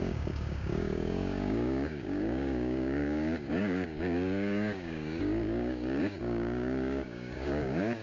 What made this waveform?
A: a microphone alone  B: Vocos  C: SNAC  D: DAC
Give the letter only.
D